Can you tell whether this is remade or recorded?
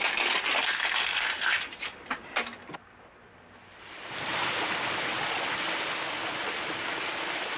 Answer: recorded